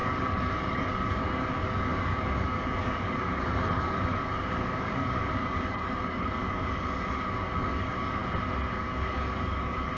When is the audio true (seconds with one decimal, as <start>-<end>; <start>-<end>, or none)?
8.2-8.7